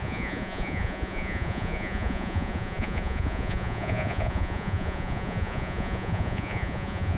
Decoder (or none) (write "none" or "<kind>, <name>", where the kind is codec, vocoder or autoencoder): vocoder, Vocos